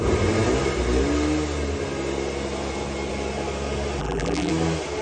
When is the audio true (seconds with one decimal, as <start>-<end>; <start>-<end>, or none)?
0.0-4.0; 4.5-5.0